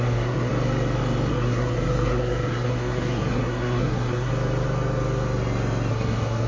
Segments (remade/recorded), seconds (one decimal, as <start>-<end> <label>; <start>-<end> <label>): 0.0-0.5 remade; 0.5-1.3 recorded; 1.3-4.3 remade; 4.3-5.9 recorded; 5.9-6.5 remade